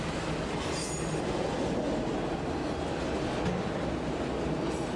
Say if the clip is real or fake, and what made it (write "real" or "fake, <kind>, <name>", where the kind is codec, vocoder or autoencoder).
real